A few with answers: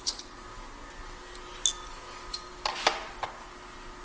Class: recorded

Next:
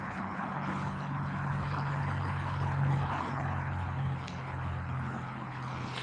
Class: remade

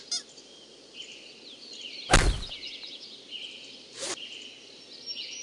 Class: recorded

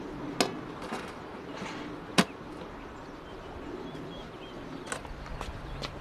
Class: recorded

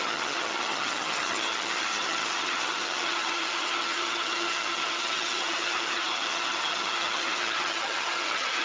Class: remade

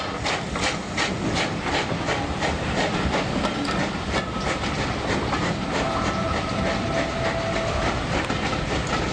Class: recorded